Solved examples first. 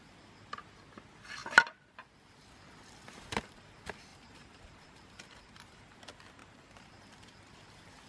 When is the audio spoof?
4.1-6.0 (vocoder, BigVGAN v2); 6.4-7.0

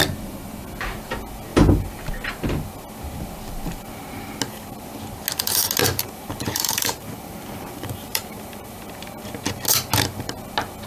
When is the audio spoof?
5.8-8.8 (vocoder, BigVGAN v2)

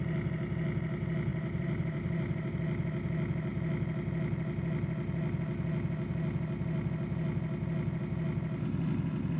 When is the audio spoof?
1.3-2.5 (vocoder, BigVGAN v2)

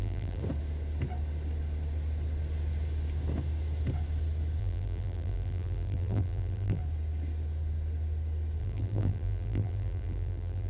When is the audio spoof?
0.0-0.4 (vocoder, BigVGAN v2); 4.6-6.8; 8.6-10.7

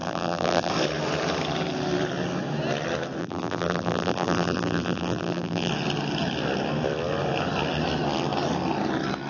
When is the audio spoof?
0.0-0.7 (vocoder, BigVGAN v2); 3.2-5.7

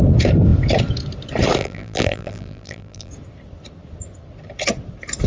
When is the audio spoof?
1.6-3.1 (vocoder, BigVGAN v2)

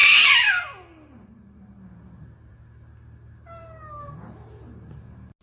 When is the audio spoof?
0.0-2.7 (vocoder, BigVGAN v2)